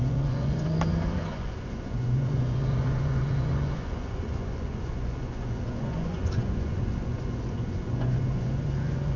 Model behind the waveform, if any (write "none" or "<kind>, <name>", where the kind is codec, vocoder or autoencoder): vocoder, Vocos